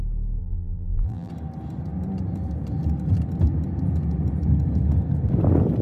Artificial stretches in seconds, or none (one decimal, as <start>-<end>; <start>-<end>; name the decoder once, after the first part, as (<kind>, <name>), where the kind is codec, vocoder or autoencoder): 0.4-1.3 (vocoder, BigVGAN v2)